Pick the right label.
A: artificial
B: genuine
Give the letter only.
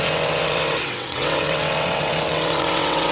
A